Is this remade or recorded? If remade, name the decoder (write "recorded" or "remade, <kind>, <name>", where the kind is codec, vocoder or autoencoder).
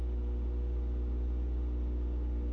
recorded